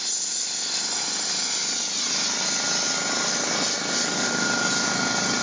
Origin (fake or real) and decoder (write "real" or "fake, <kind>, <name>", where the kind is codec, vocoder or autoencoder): real